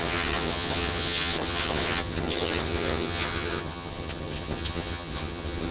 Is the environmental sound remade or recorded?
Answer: remade